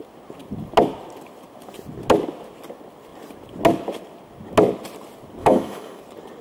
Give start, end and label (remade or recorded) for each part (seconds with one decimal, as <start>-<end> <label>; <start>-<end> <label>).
0.0-5.4 recorded; 5.4-6.0 remade; 6.0-6.4 recorded